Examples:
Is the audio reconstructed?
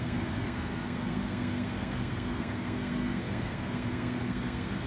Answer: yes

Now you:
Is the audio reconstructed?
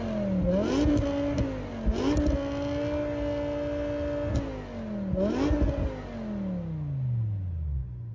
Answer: no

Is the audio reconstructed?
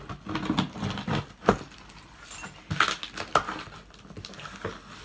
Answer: no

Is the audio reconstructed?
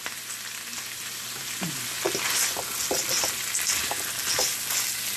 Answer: no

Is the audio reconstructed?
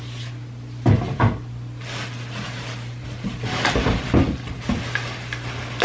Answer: no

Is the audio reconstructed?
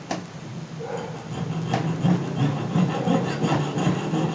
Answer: no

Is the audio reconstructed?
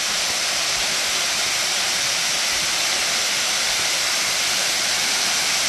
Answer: no